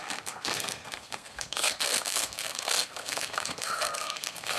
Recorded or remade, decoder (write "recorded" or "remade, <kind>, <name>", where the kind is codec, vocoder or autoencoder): remade, codec, SNAC